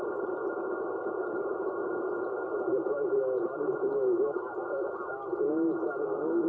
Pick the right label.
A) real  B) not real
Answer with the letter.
A